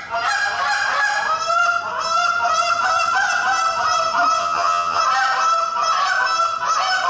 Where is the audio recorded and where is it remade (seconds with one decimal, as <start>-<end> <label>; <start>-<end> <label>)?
0.0-4.4 recorded; 4.4-5.0 remade; 5.0-7.1 recorded